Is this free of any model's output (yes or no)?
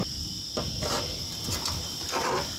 no